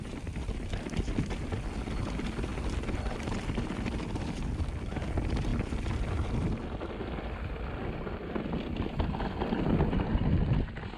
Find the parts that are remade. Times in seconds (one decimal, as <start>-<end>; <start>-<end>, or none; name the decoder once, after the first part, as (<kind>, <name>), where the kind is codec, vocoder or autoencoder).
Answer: none